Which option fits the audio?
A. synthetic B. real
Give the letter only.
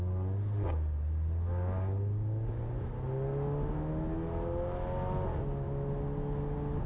B